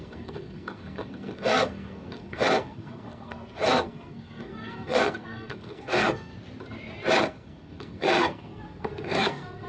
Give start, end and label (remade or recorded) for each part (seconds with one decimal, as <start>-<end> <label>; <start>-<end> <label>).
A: 0.0-6.3 remade; 6.3-7.2 recorded; 7.2-9.7 remade